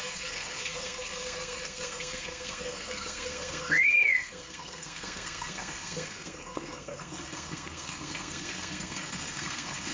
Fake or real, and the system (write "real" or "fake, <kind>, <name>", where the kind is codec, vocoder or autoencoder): fake, codec, SNAC